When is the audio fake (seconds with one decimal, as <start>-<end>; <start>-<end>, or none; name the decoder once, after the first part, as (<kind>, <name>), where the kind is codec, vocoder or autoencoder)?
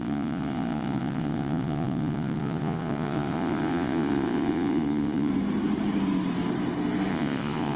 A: 0.0-5.3 (vocoder, Vocos); 7.1-7.8